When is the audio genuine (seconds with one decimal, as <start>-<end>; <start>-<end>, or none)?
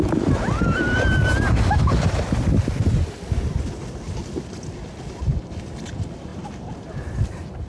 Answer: 0.0-7.7